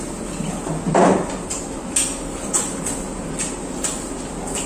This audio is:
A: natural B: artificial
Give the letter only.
A